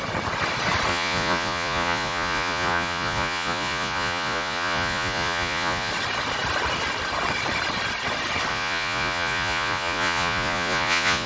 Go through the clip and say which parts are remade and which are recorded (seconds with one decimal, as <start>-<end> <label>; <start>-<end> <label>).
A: 0.0-0.9 recorded; 0.9-5.9 remade; 5.9-8.5 recorded; 8.5-11.3 remade